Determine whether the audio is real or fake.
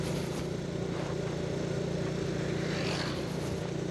fake